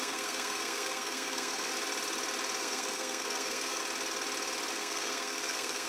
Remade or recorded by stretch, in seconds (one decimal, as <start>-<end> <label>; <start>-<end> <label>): 0.0-1.7 remade; 1.7-2.6 recorded; 2.6-3.8 remade; 3.8-4.7 recorded; 4.7-5.9 remade